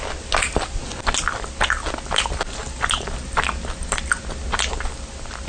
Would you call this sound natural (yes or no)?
yes